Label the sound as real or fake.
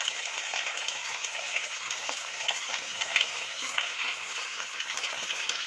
fake